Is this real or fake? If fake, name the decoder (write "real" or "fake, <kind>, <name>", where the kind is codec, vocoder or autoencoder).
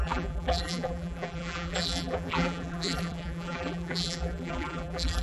fake, vocoder, BigVGAN v2